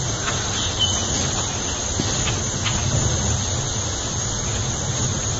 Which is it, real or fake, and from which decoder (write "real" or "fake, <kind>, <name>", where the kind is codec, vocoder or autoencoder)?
real